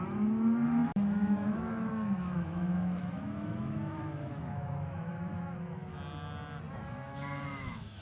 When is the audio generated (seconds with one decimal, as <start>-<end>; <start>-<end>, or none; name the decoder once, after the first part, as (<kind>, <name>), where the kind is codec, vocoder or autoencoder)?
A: 0.0-5.9 (autoencoder, DAC-VAE); 6.7-8.0